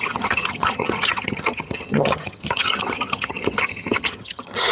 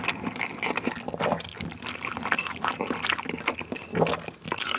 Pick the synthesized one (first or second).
first